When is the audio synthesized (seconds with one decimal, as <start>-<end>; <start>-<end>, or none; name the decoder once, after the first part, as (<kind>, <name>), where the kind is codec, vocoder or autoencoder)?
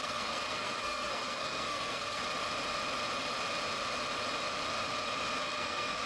0.0-2.2 (codec, SNAC); 5.4-6.1